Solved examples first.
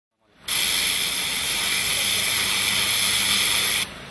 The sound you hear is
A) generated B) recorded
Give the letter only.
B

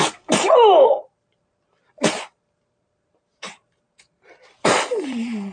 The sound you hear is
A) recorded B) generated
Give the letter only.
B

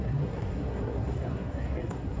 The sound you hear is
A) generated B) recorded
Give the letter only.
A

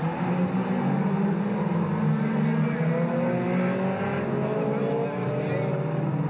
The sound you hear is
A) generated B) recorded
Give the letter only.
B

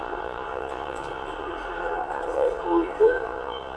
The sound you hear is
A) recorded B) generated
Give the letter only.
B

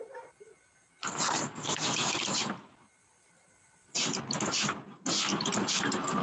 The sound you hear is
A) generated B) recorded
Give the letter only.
B